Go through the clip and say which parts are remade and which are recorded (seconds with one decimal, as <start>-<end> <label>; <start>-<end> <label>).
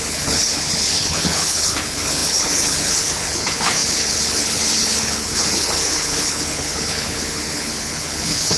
0.0-8.6 remade